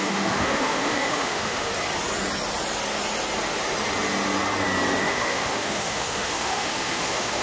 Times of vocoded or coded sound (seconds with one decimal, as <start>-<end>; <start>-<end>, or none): 0.0-1.7; 5.0-7.4